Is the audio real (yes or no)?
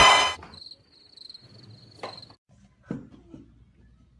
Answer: yes